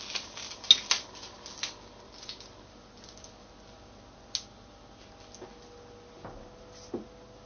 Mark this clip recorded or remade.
recorded